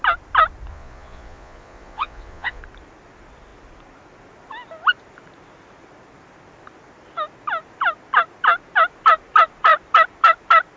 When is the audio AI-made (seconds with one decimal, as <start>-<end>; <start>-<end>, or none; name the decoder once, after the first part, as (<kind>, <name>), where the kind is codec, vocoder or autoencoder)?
0.7-2.6 (vocoder, Vocos)